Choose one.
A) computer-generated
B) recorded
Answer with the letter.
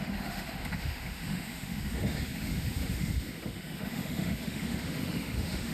A